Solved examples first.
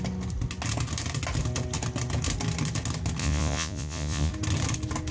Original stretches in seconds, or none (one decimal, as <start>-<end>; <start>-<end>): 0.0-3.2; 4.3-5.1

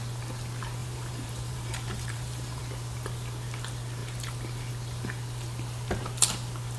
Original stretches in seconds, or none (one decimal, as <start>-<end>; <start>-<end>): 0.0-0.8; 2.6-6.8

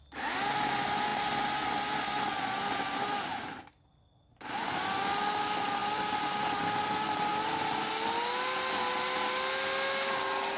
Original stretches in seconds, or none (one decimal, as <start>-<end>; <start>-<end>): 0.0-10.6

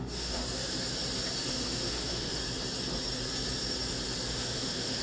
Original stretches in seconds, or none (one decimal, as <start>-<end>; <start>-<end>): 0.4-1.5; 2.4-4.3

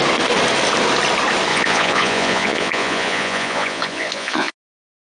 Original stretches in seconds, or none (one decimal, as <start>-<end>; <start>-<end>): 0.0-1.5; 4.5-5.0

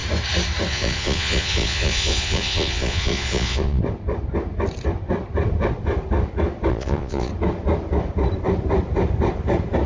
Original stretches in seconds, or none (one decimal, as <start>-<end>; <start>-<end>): 0.0-0.7; 3.8-6.7; 7.3-9.9

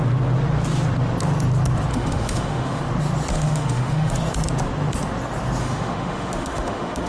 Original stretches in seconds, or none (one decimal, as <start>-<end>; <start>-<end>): 0.0-1.9; 2.8-3.3; 4.1-5.6

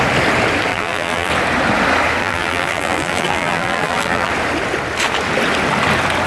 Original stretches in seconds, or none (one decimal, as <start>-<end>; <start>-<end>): 0.0-0.7; 1.3-2.2; 4.3-6.3